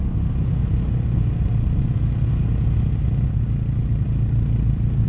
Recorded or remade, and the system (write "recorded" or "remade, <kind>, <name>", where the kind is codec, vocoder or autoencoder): recorded